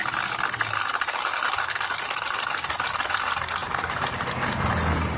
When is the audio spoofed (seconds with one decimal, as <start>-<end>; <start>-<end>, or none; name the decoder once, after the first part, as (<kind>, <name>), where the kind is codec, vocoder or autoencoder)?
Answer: none